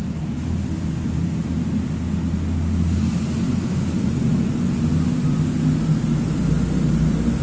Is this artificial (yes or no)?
no